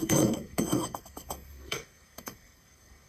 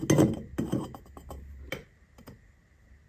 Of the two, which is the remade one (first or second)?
first